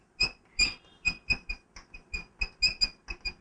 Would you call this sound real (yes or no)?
yes